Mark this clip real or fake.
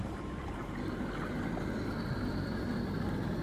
real